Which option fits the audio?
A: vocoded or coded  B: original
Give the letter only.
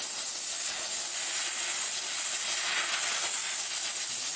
B